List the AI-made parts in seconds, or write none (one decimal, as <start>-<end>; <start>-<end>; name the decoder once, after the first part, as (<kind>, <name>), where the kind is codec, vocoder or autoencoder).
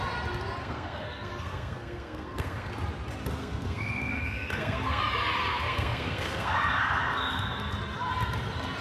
0.6-2.7 (codec, SNAC); 3.4-5.0; 5.4-7.7